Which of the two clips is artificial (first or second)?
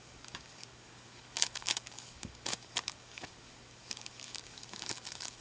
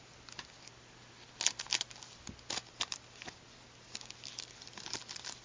first